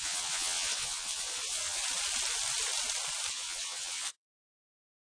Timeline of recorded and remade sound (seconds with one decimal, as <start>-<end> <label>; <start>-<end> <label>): 0.0-1.8 remade; 1.8-3.3 recorded; 3.3-5.0 remade